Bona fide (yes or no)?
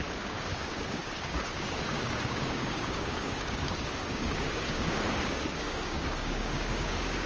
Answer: no